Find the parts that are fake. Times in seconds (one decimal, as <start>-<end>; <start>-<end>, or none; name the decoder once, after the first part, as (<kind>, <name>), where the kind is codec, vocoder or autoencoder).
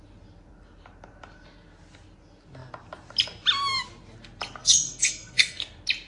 4.6-5.6 (codec, SNAC)